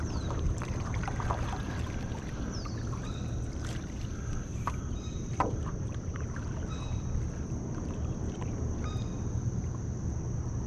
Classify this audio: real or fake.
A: fake